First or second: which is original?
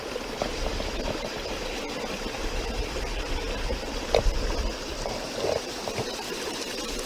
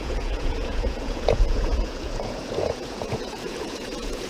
first